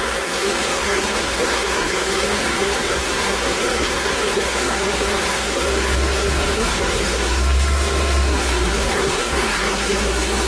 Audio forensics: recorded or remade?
remade